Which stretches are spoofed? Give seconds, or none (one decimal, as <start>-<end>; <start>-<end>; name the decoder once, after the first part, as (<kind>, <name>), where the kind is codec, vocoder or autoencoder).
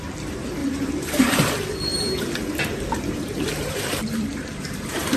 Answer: 0.6-1.5 (vocoder, BigVGAN v2); 1.9-5.2